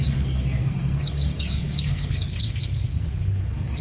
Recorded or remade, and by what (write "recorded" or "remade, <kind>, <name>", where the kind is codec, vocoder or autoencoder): remade, codec, SNAC